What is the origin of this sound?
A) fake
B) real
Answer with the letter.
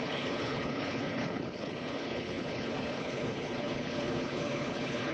A